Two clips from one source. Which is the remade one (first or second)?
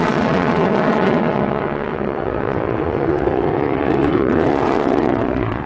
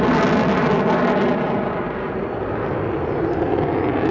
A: first